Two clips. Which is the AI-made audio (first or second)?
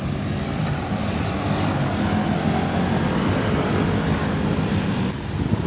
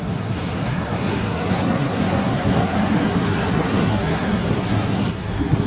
second